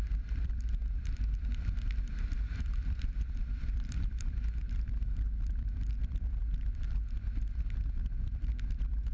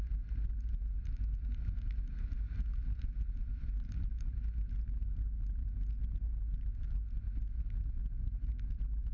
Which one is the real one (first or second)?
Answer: second